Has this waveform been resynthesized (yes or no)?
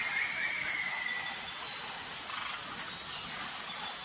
no